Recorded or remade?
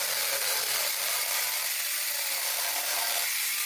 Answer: remade